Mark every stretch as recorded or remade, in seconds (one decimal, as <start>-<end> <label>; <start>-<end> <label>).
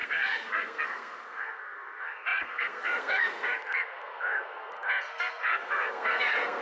0.0-6.6 remade